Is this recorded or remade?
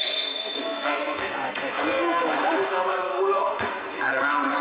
remade